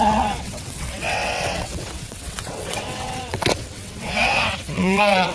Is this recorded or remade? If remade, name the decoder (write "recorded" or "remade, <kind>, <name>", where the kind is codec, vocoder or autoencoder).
remade, vocoder, WaveNeXt